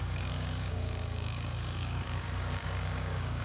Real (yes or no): no